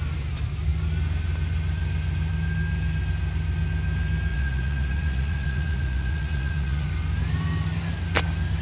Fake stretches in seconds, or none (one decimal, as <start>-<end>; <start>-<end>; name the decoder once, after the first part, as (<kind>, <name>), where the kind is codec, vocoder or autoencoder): 4.3-6.9 (vocoder, Vocos)

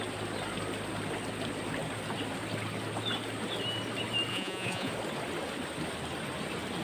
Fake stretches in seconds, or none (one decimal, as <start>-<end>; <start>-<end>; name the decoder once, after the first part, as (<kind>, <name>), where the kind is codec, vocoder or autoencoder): 4.3-4.9 (vocoder, Vocos)

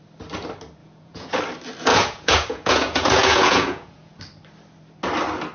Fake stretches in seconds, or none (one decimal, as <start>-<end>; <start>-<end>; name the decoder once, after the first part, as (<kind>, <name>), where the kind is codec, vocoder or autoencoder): 0.8-1.4 (vocoder, Vocos); 1.9-4.2

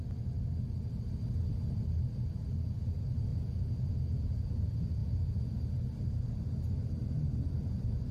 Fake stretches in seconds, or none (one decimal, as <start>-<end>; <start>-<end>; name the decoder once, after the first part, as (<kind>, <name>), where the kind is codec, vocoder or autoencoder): 3.3-4.6 (vocoder, Vocos); 5.0-5.6